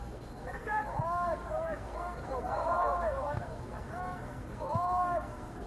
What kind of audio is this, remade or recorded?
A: remade